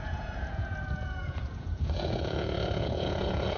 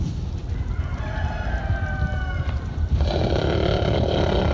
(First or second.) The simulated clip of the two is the first